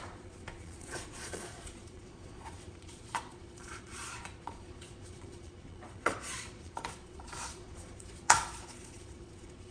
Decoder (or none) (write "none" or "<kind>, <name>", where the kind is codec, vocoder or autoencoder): vocoder, Vocos